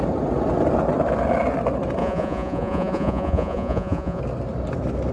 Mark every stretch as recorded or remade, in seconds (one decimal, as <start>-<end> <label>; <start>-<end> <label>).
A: 0.0-2.0 recorded; 2.0-4.2 remade; 4.2-5.1 recorded